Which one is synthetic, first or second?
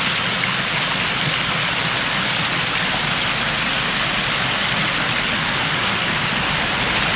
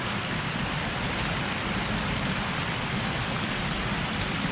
second